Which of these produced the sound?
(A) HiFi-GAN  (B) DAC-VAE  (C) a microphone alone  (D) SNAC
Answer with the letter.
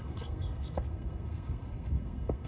D